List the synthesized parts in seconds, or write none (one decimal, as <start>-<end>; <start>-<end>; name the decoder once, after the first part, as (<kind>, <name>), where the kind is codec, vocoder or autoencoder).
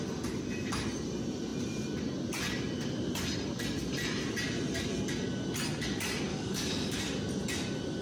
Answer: 6.3-7.0 (codec, DAC)